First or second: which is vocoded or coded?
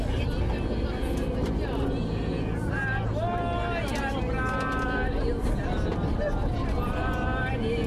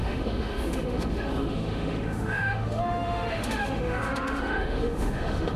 second